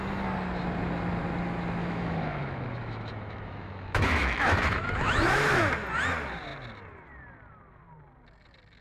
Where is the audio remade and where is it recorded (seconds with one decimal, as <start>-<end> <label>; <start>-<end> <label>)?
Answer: 0.0-1.8 recorded; 1.8-5.7 remade; 5.7-8.8 recorded